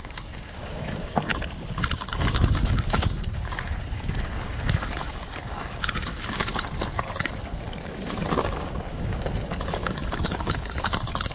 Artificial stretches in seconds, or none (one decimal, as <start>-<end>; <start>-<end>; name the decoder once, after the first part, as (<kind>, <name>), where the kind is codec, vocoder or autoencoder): 0.0-1.3 (codec, DAC); 2.1-6.5; 7.2-11.3